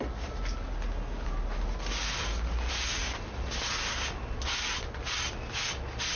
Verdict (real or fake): real